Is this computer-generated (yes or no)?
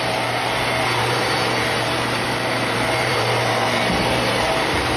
yes